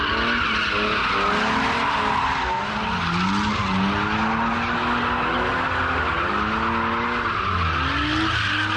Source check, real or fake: real